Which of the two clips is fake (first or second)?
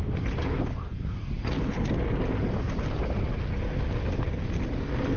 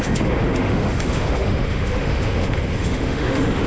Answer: second